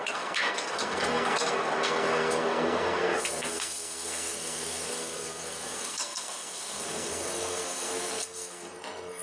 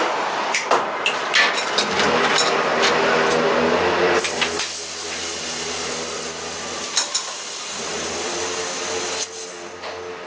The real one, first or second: second